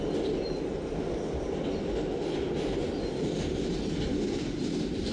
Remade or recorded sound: recorded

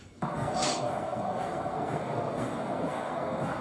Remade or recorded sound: remade